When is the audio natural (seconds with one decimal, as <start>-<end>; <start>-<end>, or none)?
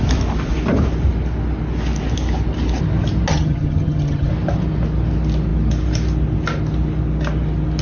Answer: 0.0-3.3; 4.3-7.8